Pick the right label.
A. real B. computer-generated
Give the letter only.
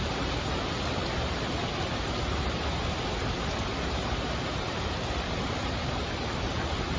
B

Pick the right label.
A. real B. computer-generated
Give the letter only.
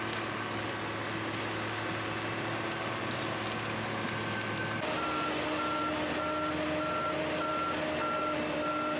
A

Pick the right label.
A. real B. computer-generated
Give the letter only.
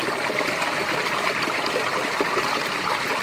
A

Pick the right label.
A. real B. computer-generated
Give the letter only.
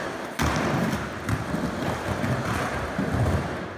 A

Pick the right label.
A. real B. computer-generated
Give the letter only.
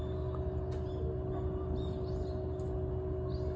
A